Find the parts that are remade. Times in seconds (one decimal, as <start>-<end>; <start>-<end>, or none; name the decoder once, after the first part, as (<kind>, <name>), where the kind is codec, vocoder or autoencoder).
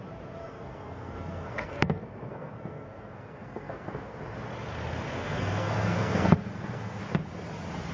0.4-4.2 (codec, SNAC); 5.2-7.0